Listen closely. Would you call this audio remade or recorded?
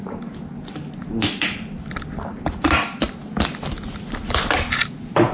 recorded